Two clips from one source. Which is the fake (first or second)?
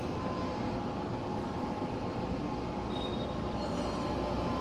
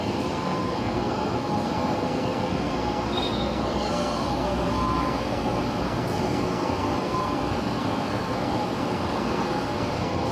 second